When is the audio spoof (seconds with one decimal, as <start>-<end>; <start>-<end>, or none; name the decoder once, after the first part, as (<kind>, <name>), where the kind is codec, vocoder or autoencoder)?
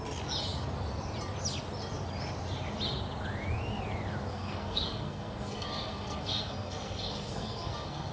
4.3-8.1 (codec, SNAC)